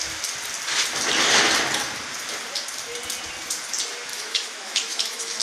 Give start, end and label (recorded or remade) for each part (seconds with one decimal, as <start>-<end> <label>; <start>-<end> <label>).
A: 0.0-4.1 recorded; 4.1-5.4 remade